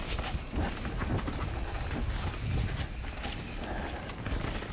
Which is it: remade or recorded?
recorded